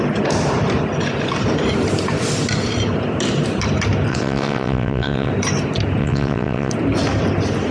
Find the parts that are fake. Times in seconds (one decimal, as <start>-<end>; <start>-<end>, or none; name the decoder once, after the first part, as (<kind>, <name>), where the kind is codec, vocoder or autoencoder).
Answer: 4.1-5.3 (vocoder, WaveNeXt); 6.0-6.7